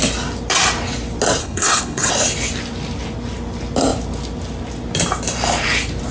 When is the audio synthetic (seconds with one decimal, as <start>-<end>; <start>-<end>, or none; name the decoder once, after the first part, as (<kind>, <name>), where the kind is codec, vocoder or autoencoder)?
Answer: 1.4-2.1 (codec, HILCodec)